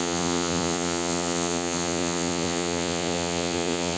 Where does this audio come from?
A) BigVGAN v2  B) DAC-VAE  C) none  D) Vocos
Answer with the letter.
D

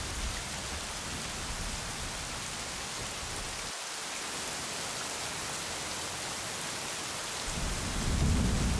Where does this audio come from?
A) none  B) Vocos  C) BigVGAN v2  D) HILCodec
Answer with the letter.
A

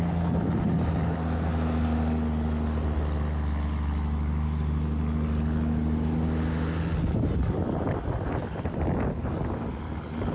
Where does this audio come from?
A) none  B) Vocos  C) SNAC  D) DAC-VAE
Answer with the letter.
A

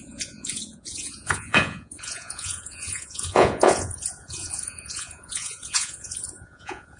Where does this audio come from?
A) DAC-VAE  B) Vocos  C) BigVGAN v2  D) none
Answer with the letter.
B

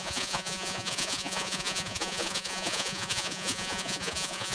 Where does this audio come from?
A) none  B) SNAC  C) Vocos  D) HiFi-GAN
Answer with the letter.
C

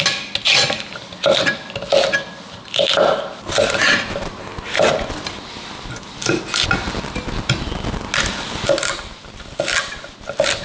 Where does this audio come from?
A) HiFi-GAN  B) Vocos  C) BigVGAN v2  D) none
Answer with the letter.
D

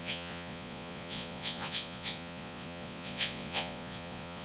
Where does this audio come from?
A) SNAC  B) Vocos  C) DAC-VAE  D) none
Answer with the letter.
B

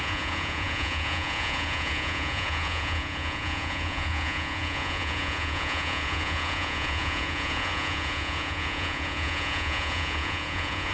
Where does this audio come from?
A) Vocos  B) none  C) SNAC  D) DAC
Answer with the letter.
A